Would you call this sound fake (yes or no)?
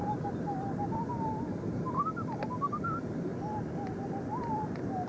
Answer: yes